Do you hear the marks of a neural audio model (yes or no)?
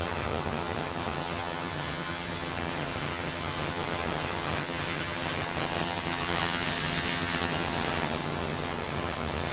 yes